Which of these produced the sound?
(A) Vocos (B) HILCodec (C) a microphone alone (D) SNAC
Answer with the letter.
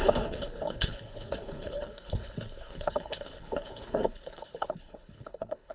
B